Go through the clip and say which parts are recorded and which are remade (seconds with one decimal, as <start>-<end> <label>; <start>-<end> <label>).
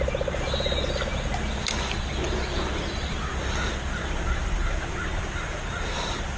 0.0-6.4 recorded